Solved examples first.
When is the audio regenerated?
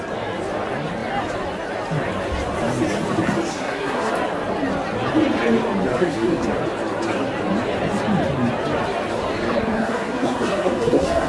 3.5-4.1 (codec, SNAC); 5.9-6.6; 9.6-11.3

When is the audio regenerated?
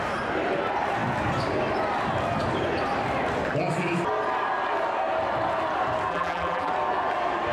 6.1-6.7 (vocoder, BigVGAN v2)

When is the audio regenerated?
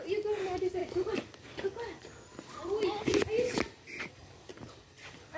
none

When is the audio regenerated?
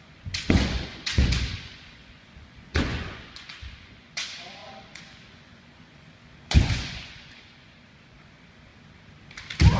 0.0-8.7 (vocoder, Vocos)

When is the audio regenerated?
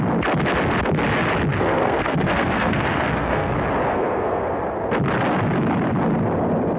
1.5-3.5 (codec, SNAC); 3.9-4.4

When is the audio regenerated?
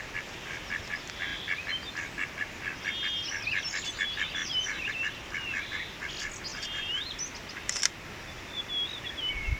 4.4-4.9 (vocoder, BigVGAN v2); 6.5-7.7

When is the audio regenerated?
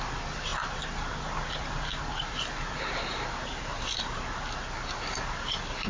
none